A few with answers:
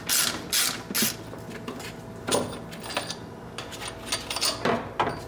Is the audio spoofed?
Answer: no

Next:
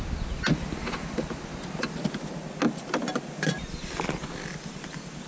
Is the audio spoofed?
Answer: no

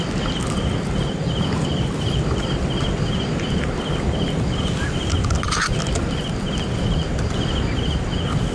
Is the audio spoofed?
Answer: no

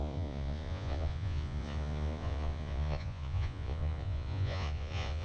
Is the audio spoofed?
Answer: yes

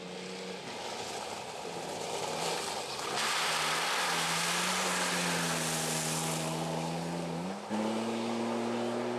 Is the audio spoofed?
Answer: no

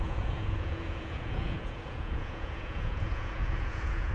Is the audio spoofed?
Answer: yes